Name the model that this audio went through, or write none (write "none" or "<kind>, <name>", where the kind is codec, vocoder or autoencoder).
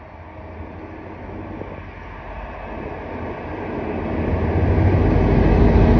none